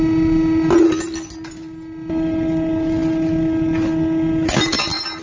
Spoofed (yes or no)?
no